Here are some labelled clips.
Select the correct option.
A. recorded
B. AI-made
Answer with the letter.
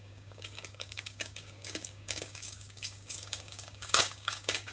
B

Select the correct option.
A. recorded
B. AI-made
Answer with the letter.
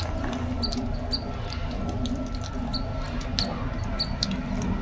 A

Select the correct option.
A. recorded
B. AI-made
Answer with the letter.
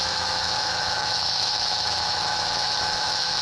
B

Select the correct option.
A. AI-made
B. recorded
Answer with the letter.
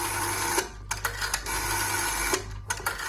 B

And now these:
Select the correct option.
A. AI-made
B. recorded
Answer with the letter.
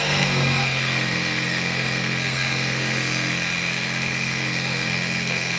A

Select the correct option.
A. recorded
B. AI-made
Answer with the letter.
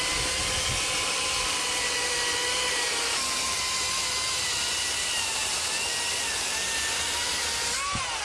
A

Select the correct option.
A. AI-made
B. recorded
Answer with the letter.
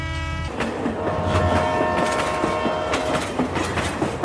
B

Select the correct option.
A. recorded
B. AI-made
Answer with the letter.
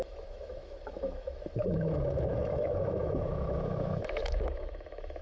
B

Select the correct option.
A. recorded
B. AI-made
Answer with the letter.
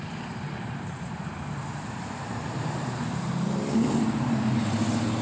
B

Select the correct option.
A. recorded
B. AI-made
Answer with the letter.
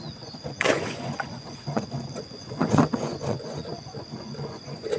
B